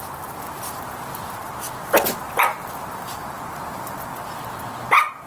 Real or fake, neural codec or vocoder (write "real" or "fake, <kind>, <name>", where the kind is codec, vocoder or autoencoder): real